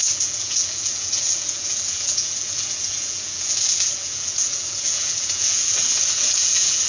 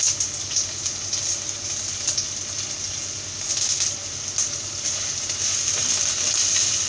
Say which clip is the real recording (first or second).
second